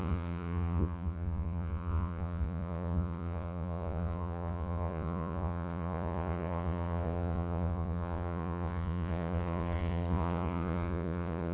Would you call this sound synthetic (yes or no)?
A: yes